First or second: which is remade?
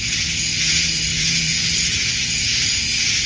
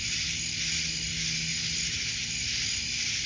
first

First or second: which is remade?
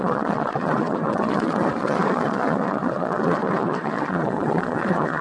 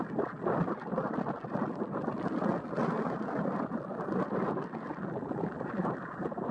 first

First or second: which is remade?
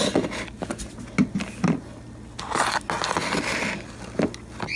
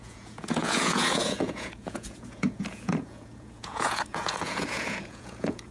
second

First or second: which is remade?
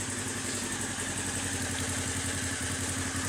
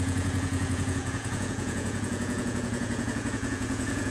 second